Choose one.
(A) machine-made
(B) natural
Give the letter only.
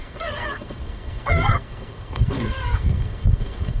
A